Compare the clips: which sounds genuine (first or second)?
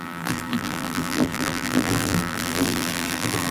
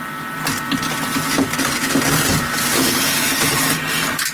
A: second